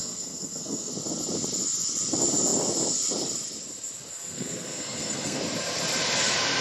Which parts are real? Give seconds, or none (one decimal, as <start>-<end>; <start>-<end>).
0.9-4.1; 5.4-6.6